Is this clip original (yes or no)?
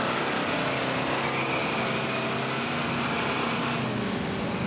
yes